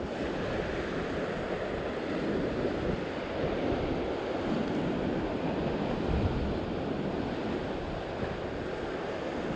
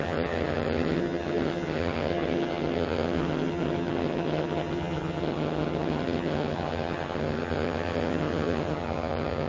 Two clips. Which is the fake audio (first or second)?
second